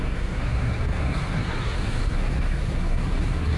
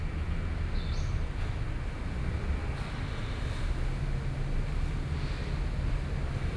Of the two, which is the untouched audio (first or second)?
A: second